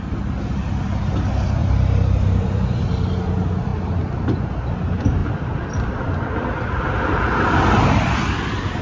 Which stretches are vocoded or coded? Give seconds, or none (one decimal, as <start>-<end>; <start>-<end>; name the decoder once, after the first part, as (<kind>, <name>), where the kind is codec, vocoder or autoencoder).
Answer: 1.6-2.9 (vocoder, BigVGAN v2); 5.2-6.8